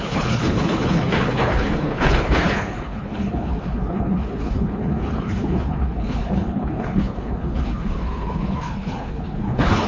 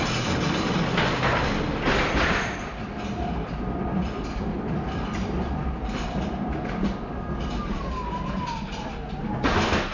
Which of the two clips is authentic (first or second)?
second